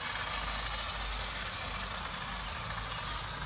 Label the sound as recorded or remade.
recorded